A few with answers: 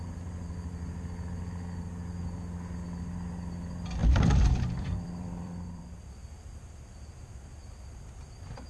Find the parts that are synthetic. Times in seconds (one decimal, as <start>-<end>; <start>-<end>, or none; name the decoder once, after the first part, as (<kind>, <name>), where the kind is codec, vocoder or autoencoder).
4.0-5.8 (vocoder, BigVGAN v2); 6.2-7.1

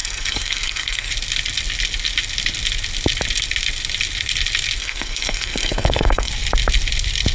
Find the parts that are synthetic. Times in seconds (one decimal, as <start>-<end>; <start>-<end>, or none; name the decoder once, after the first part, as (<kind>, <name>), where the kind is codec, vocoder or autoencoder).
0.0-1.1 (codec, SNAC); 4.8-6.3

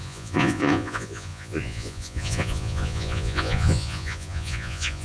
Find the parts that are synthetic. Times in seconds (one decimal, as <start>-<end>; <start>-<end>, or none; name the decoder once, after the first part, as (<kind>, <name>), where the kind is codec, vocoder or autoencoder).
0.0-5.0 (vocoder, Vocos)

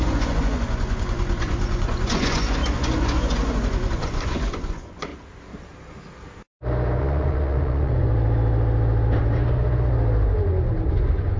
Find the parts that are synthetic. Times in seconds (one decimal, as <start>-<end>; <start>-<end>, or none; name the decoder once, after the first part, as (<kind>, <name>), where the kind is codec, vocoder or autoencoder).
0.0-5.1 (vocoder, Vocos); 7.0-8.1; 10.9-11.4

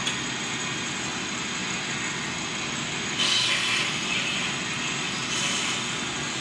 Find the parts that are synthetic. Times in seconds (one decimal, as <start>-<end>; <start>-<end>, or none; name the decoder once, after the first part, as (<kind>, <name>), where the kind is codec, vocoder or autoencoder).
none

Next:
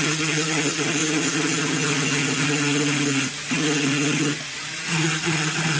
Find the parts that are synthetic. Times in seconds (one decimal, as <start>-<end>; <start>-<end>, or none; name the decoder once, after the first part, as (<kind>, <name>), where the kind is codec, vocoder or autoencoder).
0.0-1.0 (vocoder, Vocos); 2.5-5.8

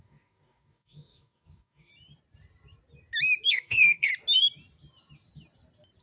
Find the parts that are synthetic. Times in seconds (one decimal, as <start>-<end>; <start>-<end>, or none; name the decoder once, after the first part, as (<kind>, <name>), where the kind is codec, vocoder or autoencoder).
0.0-1.9 (codec, DAC); 3.5-4.1

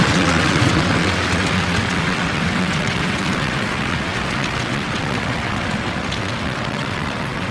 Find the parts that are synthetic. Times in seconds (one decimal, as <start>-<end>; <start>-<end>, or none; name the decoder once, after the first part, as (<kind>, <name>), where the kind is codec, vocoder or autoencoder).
0.0-7.5 (vocoder, WaveNeXt)